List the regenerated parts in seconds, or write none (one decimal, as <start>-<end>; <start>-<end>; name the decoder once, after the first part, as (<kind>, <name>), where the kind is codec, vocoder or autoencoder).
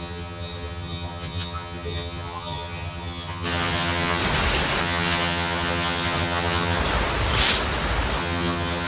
0.0-4.2 (vocoder, HiFi-GAN); 4.8-6.8; 8.2-8.9